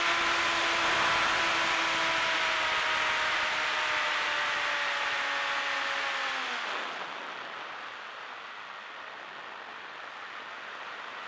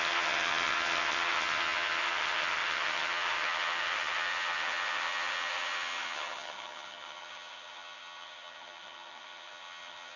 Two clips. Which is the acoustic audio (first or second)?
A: first